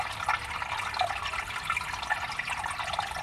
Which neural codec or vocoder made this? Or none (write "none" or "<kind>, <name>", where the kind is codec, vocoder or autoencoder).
none